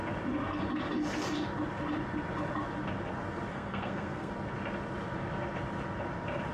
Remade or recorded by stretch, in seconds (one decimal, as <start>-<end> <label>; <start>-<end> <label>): 0.0-3.5 recorded; 3.5-4.3 remade; 4.3-6.5 recorded